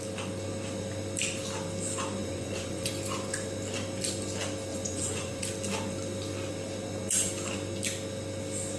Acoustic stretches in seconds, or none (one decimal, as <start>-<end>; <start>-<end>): 0.0-2.2; 2.9-4.7; 5.4-8.8